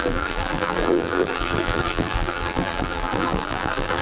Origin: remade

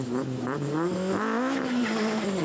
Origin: recorded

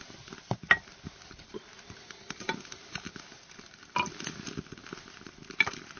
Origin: recorded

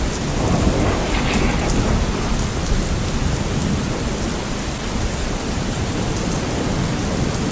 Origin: recorded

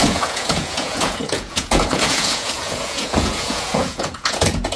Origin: remade